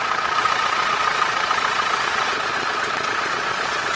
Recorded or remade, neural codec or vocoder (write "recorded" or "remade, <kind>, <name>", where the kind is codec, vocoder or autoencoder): remade, vocoder, Vocos